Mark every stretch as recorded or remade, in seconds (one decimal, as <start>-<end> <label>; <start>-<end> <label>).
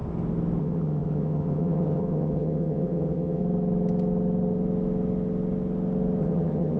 0.0-0.6 recorded; 0.6-3.4 remade; 3.4-6.2 recorded; 6.2-6.8 remade